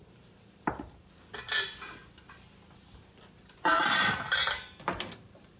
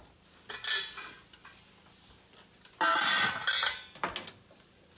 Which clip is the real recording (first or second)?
second